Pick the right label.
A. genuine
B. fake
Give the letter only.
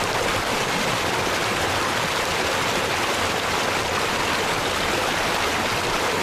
A